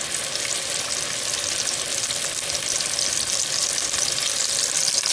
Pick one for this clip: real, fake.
real